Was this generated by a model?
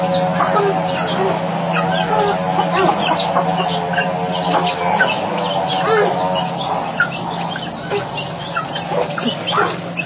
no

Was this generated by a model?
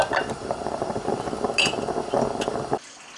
no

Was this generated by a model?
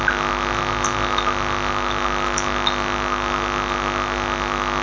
no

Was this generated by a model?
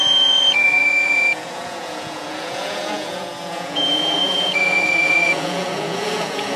yes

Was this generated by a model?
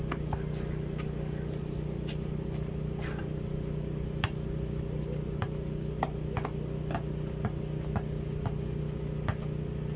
no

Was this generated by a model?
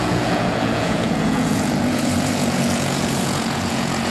yes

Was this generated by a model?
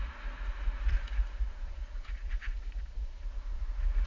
yes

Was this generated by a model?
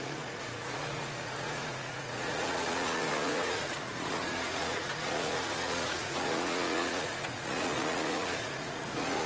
yes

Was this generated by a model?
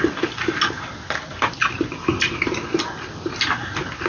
no